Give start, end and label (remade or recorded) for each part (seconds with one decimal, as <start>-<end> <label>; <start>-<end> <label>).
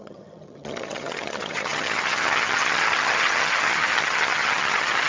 0.0-5.1 remade